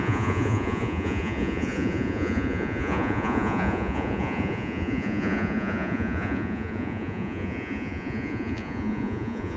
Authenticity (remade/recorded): remade